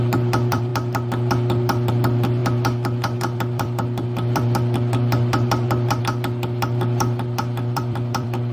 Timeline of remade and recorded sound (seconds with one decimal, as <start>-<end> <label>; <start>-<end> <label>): 0.0-8.5 remade